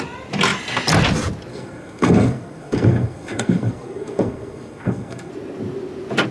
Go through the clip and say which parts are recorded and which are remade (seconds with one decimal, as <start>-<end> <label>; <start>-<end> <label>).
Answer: 0.0-1.5 recorded; 1.5-5.3 remade; 5.3-6.3 recorded